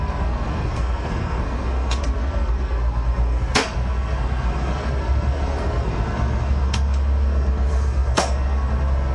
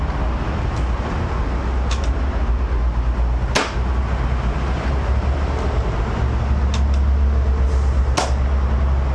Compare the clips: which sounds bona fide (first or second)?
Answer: second